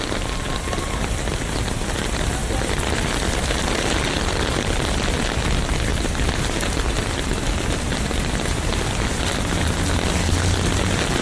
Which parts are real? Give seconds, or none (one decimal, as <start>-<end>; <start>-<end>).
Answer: 0.0-11.2